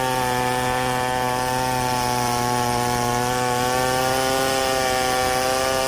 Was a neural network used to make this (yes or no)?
no